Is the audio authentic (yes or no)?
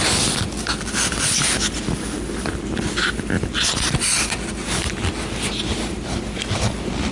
no